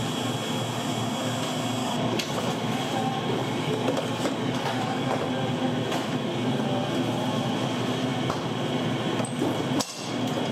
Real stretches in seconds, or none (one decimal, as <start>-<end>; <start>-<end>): 0.0-1.8; 2.4-3.4; 5.3-10.5